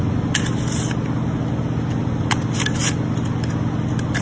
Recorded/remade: recorded